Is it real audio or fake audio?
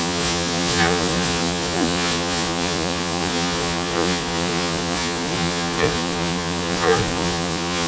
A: fake